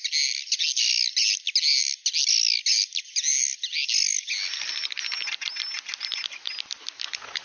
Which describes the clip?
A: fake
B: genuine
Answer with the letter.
B